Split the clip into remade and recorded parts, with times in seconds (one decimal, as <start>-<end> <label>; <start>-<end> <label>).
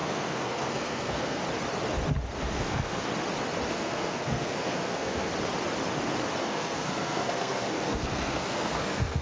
0.0-1.4 remade; 1.4-2.4 recorded; 2.4-3.1 remade; 3.1-3.7 recorded; 3.7-5.3 remade; 5.3-6.4 recorded; 6.4-9.2 remade